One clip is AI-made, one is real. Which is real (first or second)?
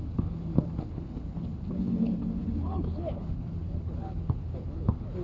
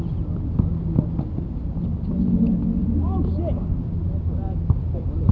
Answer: second